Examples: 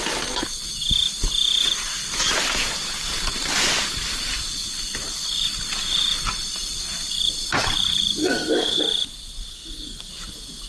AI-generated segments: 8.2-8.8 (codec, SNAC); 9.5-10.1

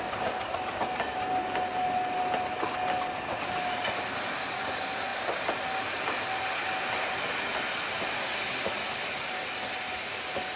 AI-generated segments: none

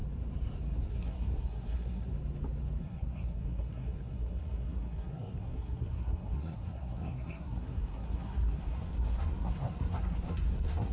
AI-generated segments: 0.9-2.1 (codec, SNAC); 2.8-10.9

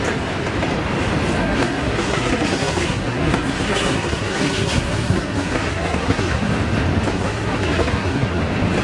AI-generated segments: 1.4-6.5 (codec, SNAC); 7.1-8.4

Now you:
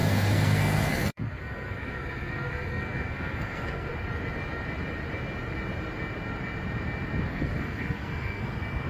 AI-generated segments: 0.0-3.9 (codec, SNAC); 7.3-8.5